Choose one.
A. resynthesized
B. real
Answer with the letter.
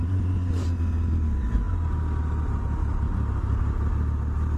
B